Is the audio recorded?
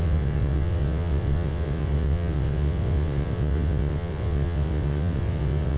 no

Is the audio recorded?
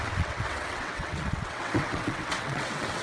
no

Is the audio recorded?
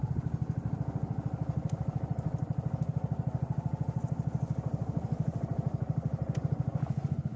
yes